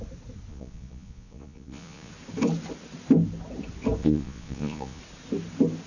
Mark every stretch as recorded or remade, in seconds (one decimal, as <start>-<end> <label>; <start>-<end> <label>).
0.0-0.5 recorded; 0.5-2.1 remade; 2.1-4.0 recorded; 4.0-5.0 remade; 5.0-5.9 recorded